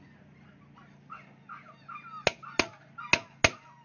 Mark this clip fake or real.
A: real